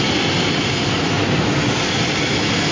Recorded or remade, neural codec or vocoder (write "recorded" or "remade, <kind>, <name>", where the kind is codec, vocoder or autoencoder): recorded